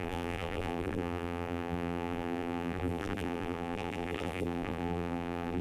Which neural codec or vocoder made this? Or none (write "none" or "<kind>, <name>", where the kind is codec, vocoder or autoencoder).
vocoder, BigVGAN v2